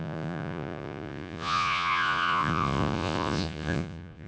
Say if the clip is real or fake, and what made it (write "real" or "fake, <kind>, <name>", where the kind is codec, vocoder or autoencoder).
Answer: fake, vocoder, Vocos